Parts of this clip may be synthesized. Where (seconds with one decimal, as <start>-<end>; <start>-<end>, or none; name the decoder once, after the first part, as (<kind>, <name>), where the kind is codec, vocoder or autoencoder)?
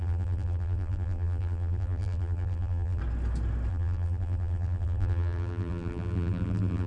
0.0-3.0 (vocoder, BigVGAN v2); 3.7-6.9